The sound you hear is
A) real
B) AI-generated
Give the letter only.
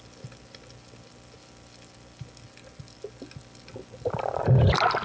A